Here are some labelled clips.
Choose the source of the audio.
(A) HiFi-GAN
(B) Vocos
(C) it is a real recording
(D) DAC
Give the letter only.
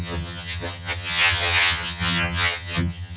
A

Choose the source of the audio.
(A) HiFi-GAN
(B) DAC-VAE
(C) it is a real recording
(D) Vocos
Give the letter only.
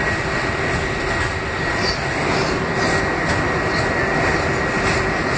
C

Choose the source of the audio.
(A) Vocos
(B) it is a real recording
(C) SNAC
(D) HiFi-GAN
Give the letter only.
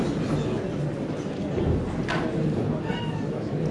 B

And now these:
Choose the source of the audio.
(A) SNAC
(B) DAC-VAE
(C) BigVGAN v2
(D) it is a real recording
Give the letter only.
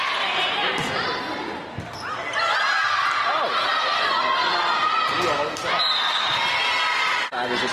D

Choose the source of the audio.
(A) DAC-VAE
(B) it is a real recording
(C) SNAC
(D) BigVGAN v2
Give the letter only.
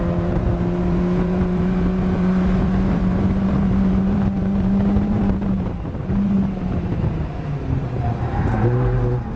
D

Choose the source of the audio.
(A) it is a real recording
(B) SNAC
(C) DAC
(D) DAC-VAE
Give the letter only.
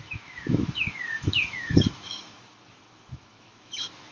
D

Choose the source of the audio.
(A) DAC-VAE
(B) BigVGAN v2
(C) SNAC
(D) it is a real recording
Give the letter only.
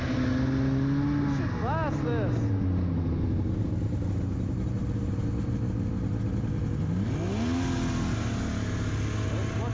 D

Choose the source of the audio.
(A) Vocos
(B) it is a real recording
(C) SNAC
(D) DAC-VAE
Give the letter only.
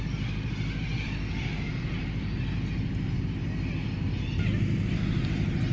B